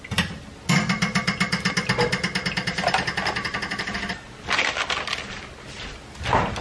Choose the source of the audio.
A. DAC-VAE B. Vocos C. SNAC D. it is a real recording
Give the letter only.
D